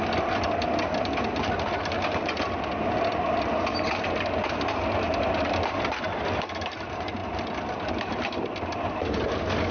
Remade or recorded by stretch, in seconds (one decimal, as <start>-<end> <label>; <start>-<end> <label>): 0.0-9.7 recorded